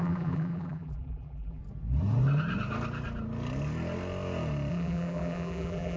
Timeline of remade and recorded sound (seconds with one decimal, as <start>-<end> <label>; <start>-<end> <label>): 0.0-1.6 remade; 1.6-4.7 recorded; 4.7-6.0 remade